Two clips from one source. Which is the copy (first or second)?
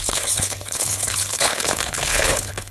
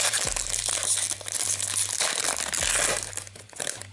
first